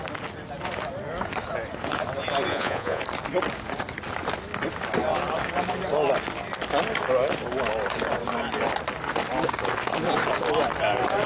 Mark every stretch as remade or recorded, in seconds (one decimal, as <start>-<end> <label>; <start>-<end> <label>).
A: 0.0-2.5 recorded; 2.5-3.0 remade; 3.0-11.3 recorded